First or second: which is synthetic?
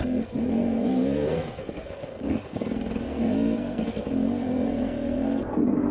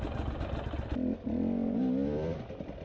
first